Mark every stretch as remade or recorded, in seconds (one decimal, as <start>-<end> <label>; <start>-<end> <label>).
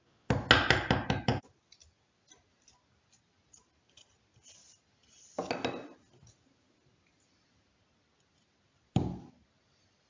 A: 0.0-10.1 recorded